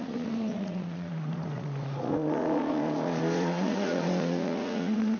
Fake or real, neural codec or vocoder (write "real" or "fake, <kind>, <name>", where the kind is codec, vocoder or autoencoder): fake, vocoder, Vocos